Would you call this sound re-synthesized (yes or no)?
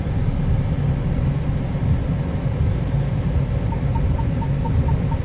no